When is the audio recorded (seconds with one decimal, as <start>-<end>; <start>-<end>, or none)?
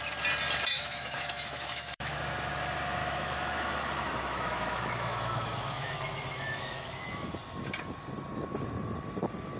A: 0.0-0.7; 2.2-3.0; 7.3-9.6